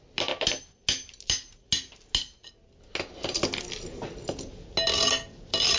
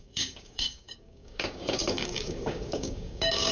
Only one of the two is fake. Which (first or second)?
second